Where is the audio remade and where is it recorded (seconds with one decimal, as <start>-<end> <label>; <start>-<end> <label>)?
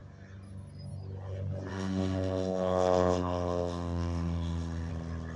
0.0-1.7 recorded; 1.7-4.9 remade; 4.9-5.4 recorded